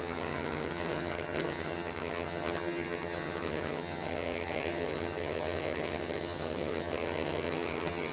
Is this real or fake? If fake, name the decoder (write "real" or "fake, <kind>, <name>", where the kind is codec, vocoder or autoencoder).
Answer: fake, vocoder, HiFi-GAN